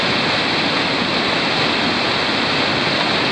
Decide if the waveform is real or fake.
real